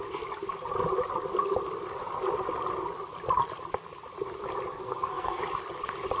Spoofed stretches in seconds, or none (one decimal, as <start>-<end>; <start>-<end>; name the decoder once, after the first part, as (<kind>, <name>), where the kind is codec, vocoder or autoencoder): 4.7-5.4 (codec, SNAC)

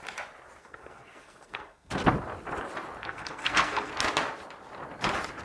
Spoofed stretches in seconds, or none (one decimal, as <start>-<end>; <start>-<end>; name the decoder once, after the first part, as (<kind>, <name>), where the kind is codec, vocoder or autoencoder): 0.6-1.9 (codec, SNAC); 3.0-3.9

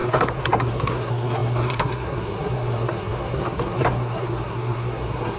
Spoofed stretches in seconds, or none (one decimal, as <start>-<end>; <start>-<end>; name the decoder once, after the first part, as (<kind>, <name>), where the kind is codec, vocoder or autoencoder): 0.0-5.4 (codec, SNAC)

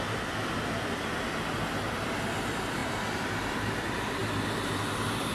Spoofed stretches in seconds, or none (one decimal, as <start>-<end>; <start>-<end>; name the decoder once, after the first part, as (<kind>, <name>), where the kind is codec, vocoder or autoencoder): none

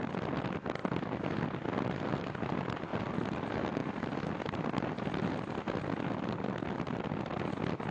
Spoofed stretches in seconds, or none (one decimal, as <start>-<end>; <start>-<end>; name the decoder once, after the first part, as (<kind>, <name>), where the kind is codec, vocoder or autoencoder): none

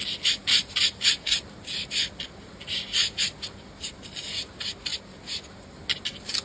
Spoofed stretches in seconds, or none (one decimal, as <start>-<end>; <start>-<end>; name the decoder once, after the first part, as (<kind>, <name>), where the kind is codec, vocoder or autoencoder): none

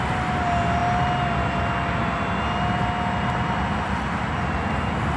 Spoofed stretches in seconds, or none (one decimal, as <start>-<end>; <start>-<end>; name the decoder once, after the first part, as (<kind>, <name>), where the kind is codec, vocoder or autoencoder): none

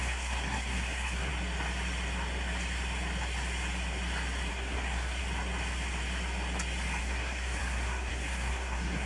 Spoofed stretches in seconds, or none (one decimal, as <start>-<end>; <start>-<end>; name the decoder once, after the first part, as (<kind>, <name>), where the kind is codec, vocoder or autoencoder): 0.0-1.3 (codec, SNAC); 4.5-5.2; 7.0-9.1